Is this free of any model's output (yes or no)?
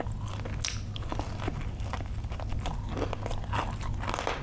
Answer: yes